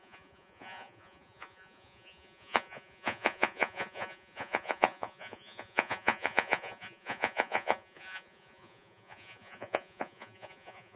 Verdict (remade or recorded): remade